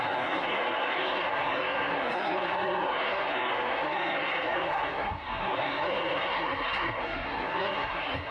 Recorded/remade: remade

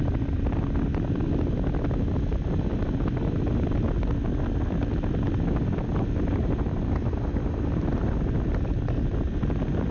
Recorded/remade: recorded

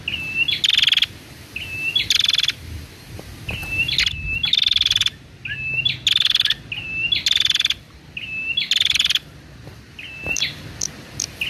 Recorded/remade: recorded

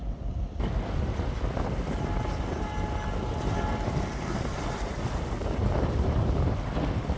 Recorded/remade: recorded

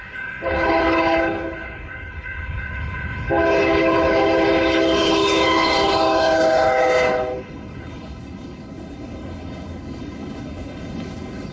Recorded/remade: remade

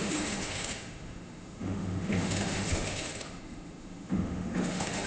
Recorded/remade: remade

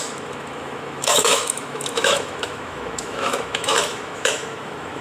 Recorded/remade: remade